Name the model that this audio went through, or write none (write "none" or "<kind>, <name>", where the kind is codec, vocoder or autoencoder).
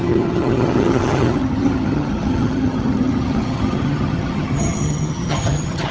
vocoder, HiFi-GAN